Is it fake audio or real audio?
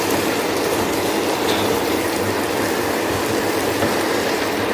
fake